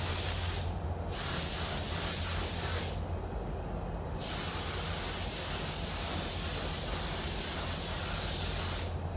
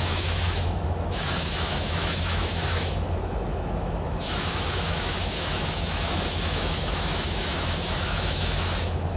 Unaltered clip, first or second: first